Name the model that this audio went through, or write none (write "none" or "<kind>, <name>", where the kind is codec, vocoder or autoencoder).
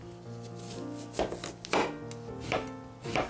none